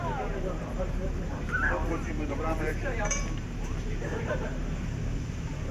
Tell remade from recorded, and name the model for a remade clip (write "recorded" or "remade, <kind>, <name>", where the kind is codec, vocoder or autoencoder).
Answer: remade, vocoder, BigVGAN v2